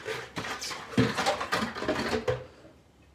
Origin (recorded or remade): recorded